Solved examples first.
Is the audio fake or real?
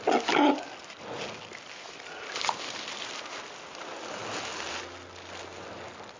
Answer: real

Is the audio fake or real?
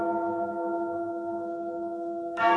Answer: fake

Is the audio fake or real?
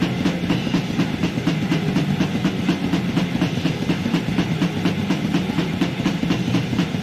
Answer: real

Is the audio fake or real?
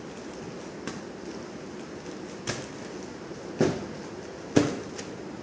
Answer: real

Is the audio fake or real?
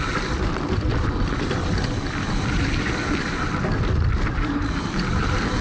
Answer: real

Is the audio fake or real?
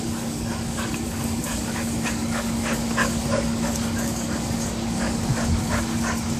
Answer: fake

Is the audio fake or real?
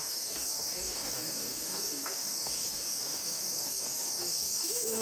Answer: fake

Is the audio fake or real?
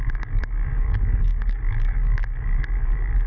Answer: fake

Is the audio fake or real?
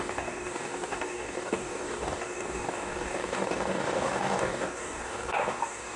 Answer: fake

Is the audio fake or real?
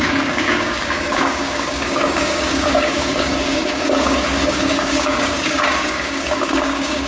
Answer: fake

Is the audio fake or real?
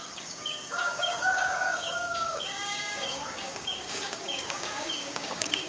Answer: fake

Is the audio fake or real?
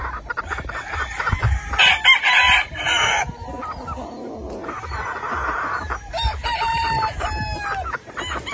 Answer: real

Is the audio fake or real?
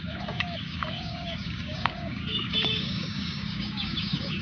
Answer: fake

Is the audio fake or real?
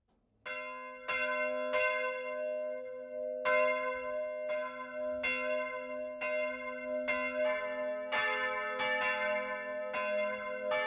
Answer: real